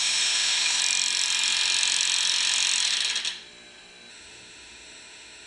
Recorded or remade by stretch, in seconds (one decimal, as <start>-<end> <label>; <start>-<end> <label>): 0.0-0.8 remade; 0.8-4.1 recorded; 4.1-5.5 remade

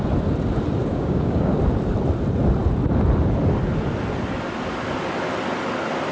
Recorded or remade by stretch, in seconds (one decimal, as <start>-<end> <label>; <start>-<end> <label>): 0.0-0.9 recorded; 0.9-1.6 remade; 1.6-6.1 recorded

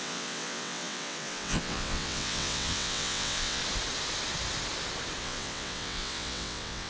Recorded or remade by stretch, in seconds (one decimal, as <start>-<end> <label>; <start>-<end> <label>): 0.0-3.6 remade; 3.6-5.2 recorded; 5.2-6.9 remade

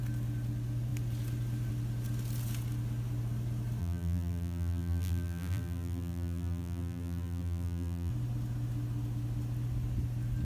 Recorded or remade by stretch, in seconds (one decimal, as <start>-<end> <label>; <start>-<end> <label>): 0.0-3.8 recorded; 3.8-8.1 remade; 8.1-10.4 recorded

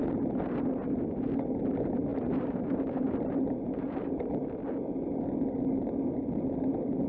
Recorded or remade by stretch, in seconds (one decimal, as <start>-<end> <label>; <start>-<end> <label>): 0.0-2.1 recorded; 2.1-4.4 remade; 4.4-7.1 recorded

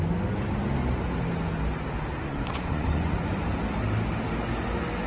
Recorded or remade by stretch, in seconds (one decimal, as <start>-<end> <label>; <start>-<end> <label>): 0.0-2.3 recorded; 2.3-3.3 remade; 3.3-5.1 recorded

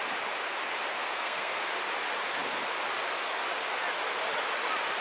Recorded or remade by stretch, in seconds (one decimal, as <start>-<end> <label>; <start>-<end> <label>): 0.0-0.9 recorded; 0.9-1.6 remade; 1.6-5.0 recorded